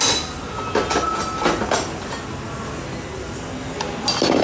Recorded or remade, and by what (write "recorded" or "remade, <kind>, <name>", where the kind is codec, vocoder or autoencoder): recorded